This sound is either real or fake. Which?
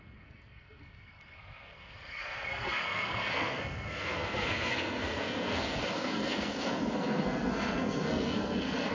fake